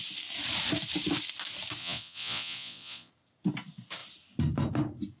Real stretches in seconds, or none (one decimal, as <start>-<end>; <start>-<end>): 0.0-1.8; 3.1-5.2